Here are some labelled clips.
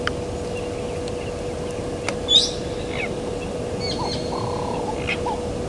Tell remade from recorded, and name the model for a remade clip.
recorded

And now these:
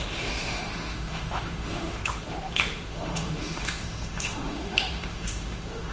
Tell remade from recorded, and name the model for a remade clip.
remade, autoencoder, DAC-VAE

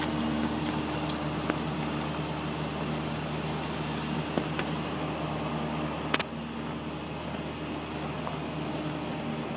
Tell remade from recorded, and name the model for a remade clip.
recorded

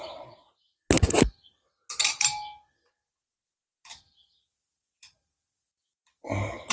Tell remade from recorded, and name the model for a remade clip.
recorded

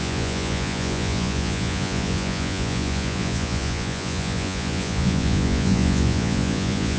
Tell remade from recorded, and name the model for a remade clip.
remade, vocoder, Vocos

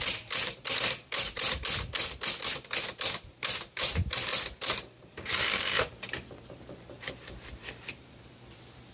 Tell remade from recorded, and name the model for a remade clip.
remade, vocoder, BigVGAN v2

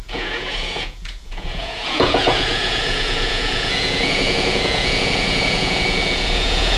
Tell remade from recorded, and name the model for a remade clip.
remade, vocoder, Vocos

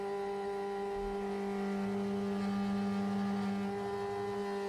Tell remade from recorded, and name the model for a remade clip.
recorded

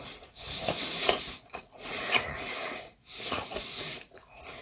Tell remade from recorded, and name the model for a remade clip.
remade, vocoder, Vocos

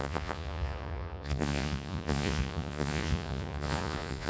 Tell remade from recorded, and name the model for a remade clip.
remade, vocoder, Vocos